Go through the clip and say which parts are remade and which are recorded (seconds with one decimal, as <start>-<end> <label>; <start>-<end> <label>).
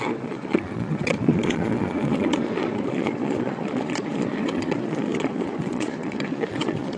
0.0-7.0 remade